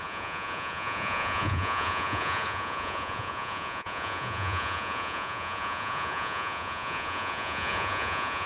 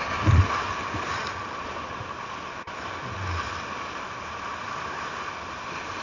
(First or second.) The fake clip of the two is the first